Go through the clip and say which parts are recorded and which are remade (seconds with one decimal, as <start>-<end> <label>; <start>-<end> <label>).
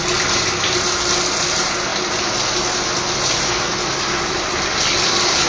0.0-5.5 recorded